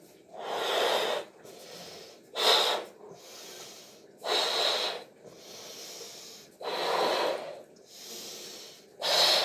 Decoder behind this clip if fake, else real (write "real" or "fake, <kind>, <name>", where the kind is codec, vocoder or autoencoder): real